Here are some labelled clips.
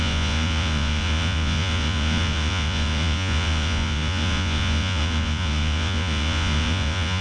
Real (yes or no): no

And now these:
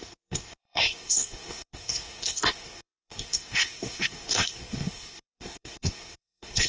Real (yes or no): no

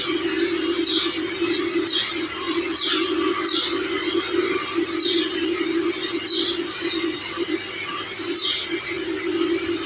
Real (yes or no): yes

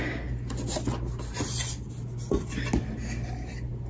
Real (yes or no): yes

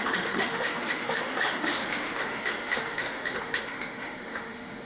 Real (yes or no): no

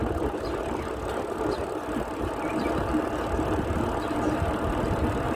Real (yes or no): yes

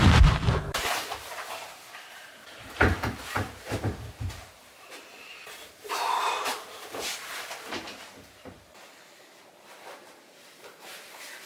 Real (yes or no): no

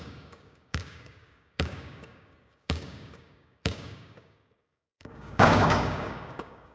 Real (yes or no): no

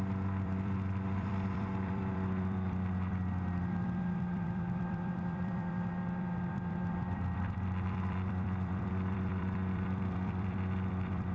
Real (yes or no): no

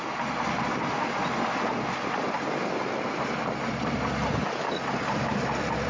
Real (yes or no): yes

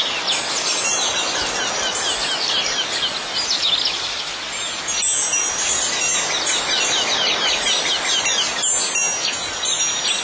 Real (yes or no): yes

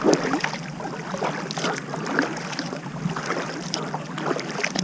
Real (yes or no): yes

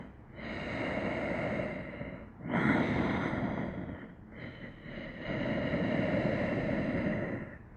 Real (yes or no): yes